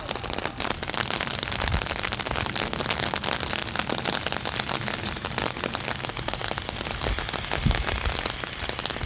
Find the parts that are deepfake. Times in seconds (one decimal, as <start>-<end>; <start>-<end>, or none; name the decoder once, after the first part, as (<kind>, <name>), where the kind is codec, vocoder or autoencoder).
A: none